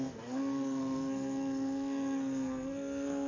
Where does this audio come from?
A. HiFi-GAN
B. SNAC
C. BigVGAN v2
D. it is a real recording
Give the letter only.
B